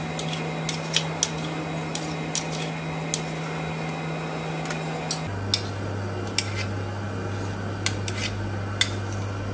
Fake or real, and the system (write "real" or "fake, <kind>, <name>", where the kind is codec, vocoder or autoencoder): real